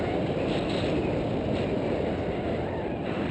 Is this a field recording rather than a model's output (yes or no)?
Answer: yes